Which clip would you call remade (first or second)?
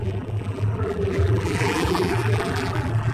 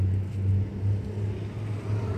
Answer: first